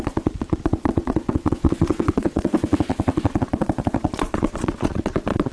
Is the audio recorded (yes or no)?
no